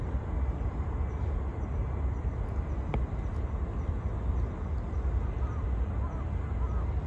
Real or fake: real